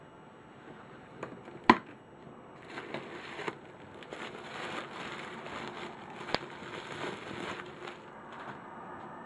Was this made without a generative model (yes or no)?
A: yes